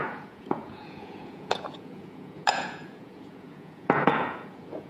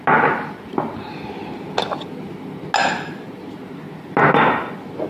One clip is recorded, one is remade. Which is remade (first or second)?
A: first